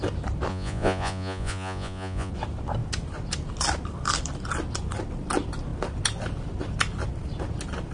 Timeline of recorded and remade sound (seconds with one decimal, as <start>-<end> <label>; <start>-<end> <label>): 0.0-0.5 recorded; 0.5-2.3 remade; 2.3-7.9 recorded